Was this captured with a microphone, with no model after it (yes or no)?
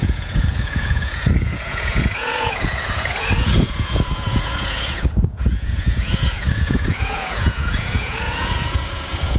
no